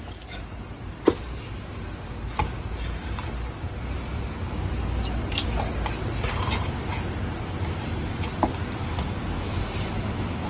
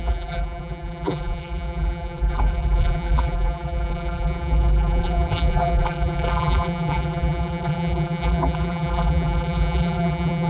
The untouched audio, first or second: first